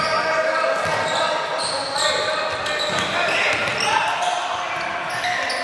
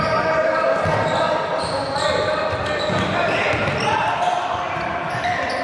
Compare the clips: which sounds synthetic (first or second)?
second